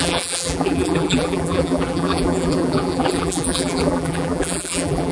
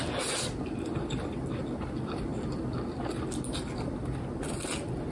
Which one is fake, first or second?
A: first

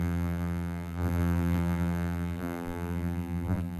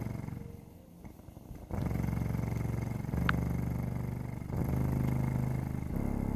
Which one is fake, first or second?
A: first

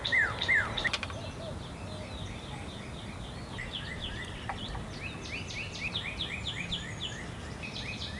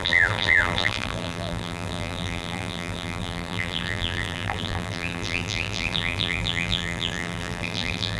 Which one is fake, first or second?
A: second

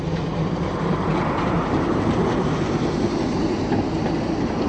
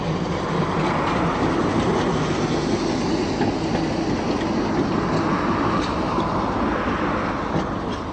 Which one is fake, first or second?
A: first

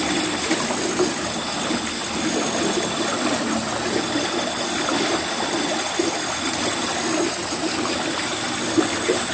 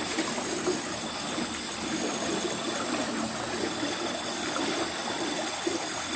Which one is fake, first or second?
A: second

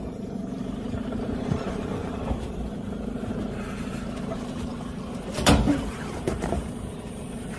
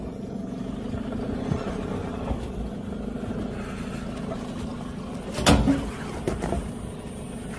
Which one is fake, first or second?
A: first